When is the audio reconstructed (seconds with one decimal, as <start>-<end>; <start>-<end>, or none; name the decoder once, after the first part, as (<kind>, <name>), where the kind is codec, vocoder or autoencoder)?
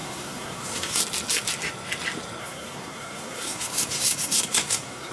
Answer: 0.0-1.0 (codec, SNAC); 2.4-5.1